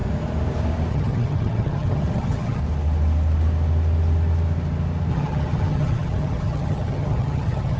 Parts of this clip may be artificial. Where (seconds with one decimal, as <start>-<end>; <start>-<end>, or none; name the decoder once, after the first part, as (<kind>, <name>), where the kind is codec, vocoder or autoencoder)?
0.9-2.6 (vocoder, HiFi-GAN); 5.1-7.8